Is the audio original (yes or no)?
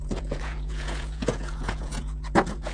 no